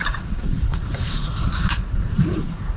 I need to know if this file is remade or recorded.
remade